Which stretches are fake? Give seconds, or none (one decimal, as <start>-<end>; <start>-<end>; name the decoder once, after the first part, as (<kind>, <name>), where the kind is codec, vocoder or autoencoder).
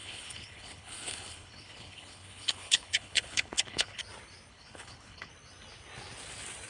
0.0-4.0 (codec, HILCodec); 4.5-5.3